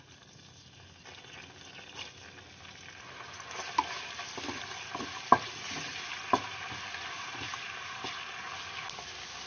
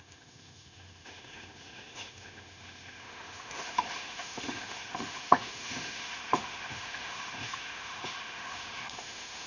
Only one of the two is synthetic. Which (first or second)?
second